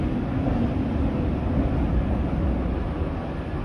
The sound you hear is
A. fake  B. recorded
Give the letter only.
B